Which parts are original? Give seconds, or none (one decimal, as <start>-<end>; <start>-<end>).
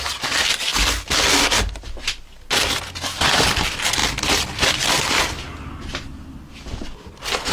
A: 0.0-7.5